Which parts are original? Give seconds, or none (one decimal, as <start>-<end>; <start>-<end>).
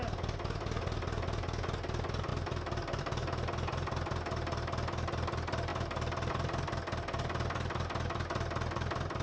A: 0.0-9.2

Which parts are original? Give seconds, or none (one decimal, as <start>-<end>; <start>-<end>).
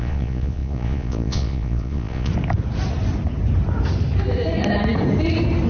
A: 2.3-5.7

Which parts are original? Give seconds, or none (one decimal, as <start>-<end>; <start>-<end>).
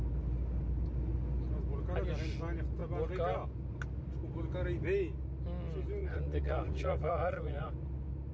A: 0.0-6.0; 7.7-8.3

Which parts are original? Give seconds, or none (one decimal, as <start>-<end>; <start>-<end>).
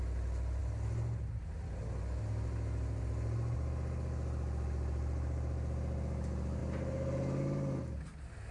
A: 0.0-8.5